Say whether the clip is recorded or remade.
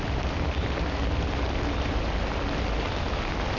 recorded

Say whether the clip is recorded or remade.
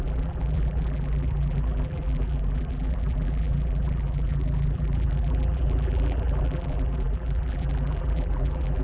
remade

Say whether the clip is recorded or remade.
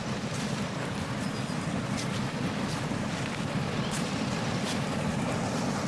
recorded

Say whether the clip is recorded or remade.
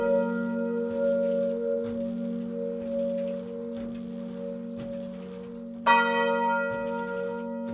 recorded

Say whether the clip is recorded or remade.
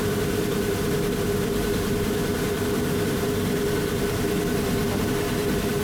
recorded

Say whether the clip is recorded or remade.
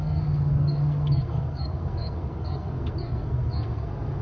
remade